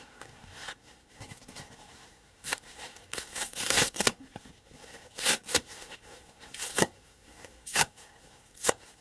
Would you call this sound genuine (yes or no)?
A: no